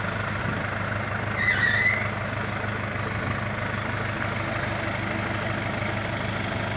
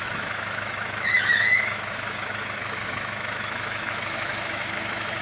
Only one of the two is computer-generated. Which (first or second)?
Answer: second